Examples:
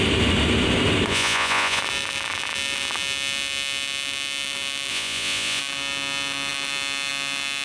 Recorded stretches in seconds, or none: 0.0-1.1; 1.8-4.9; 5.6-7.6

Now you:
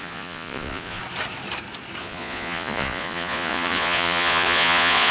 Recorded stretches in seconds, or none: 1.0-2.0

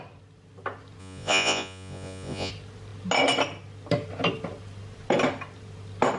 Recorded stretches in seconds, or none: 0.0-1.0; 2.5-6.2

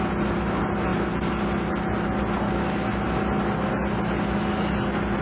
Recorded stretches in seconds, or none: 0.0-5.2